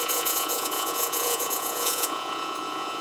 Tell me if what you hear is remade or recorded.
remade